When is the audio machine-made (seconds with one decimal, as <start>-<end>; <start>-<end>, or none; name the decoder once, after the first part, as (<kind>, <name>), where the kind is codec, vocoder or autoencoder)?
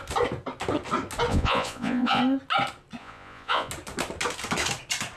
1.3-2.2 (vocoder, Vocos); 3.0-3.7